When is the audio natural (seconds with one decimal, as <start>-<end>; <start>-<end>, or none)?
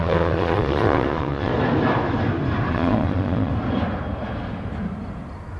1.5-2.7; 3.5-5.6